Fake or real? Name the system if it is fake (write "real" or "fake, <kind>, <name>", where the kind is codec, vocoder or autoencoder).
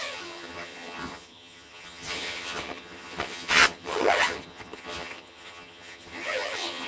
fake, vocoder, HiFi-GAN